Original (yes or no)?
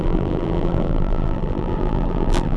no